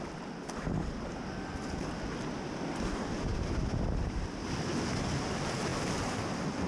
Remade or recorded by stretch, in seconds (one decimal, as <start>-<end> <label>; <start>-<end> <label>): 0.0-6.7 recorded